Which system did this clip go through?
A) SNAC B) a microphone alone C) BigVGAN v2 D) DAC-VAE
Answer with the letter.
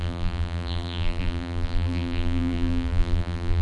C